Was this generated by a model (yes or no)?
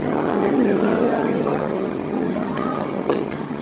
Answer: yes